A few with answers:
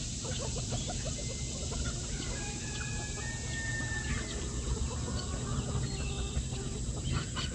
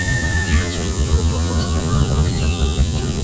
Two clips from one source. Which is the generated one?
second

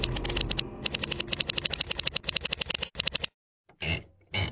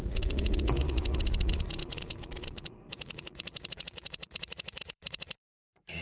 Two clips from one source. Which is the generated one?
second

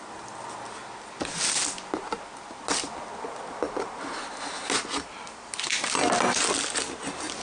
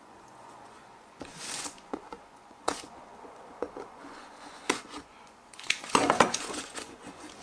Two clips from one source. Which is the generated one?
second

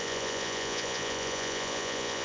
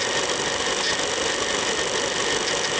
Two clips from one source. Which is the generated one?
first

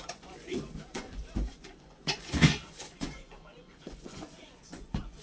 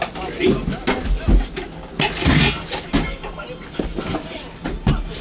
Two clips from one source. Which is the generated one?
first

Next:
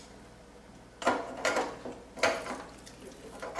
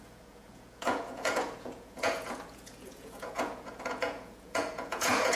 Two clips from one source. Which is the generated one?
second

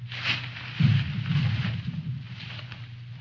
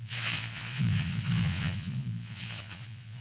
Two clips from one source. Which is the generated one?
second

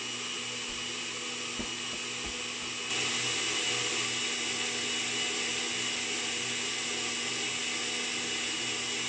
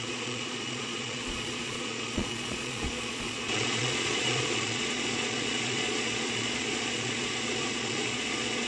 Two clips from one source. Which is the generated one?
second